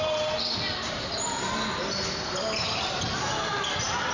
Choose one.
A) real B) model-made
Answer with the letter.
A